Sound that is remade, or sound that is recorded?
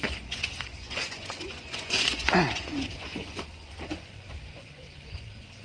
remade